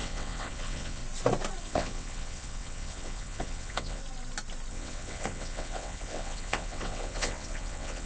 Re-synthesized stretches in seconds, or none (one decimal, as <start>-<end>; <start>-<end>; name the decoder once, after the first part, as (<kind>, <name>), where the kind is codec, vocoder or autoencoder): 0.0-1.0 (vocoder, WaveNeXt); 1.6-4.0; 4.7-8.1